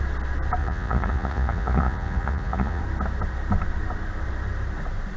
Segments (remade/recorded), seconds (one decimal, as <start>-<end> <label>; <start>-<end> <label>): 0.0-0.6 recorded; 0.6-2.8 remade; 2.8-5.2 recorded